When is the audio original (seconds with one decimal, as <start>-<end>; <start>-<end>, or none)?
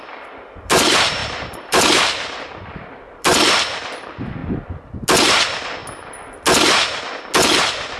3.3-3.9; 4.4-5.2; 5.8-7.6